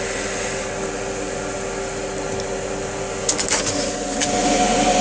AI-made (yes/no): no